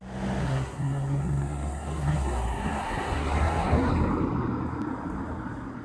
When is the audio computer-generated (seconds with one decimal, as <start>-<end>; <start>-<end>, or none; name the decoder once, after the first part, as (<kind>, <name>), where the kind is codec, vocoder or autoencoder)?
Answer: 0.4-3.9 (codec, SNAC)